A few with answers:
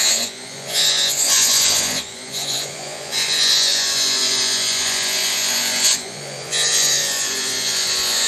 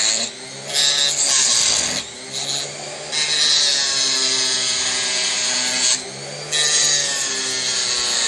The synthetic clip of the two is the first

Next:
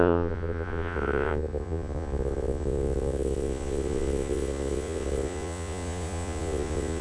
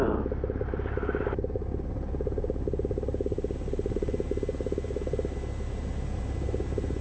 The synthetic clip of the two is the first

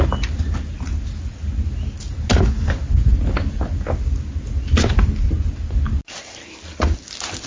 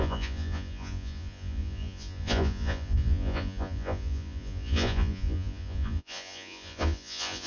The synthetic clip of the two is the second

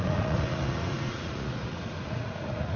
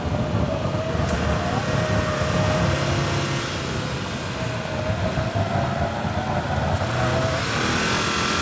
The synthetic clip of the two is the first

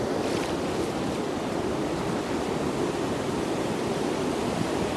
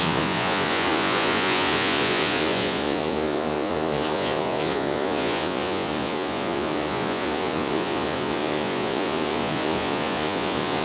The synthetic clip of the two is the second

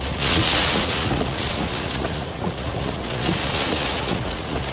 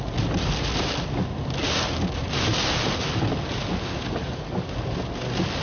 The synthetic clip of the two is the first